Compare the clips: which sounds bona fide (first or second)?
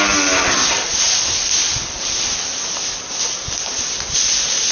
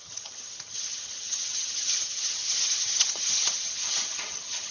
first